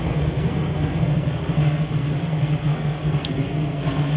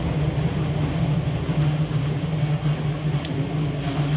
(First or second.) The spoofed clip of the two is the first